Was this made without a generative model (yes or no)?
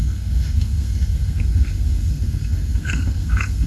no